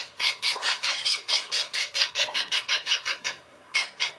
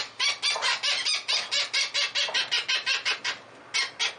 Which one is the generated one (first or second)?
first